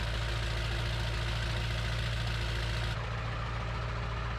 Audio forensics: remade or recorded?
recorded